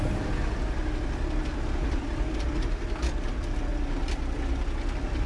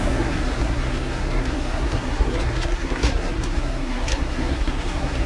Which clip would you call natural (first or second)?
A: first